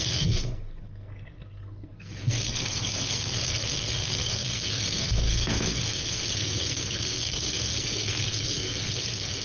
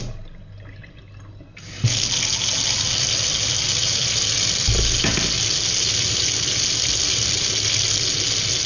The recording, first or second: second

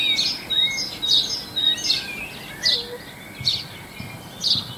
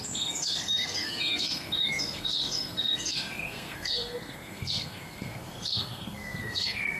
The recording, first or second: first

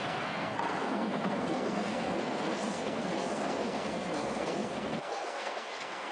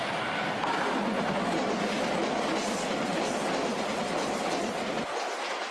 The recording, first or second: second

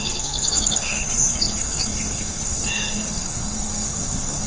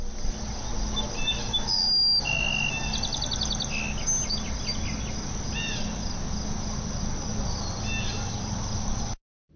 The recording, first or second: second